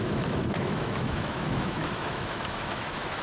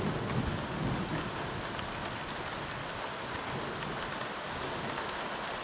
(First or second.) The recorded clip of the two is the second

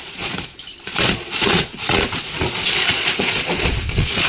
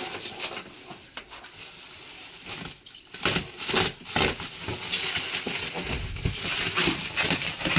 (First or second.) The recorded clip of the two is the second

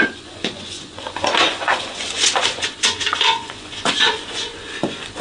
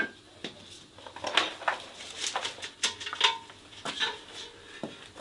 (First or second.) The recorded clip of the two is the second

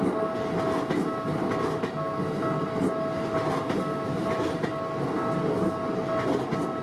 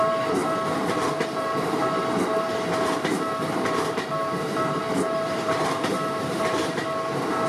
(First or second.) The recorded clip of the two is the first